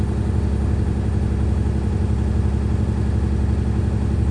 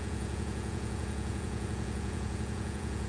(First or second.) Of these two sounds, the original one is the first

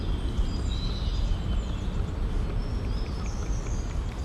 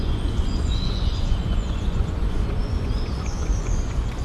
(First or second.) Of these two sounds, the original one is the first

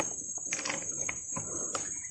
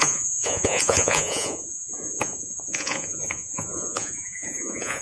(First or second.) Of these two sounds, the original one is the first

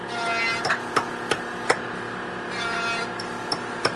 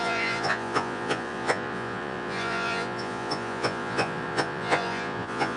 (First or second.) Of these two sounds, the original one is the first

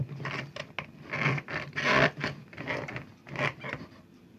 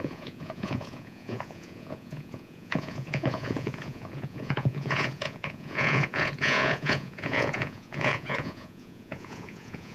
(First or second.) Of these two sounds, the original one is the first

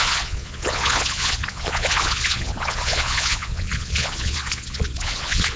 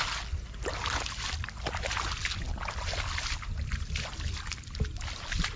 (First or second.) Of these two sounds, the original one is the second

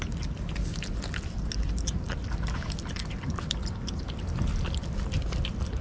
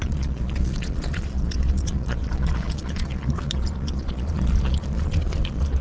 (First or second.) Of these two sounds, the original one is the first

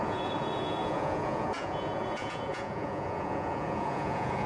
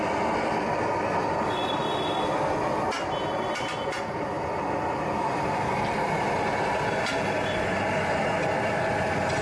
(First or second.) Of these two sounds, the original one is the second